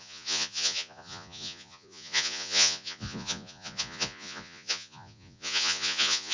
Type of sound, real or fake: fake